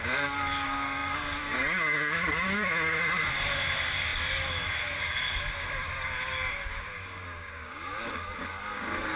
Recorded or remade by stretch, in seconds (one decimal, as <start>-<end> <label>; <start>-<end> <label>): 0.0-9.2 remade